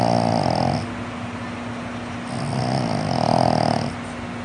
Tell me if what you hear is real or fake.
real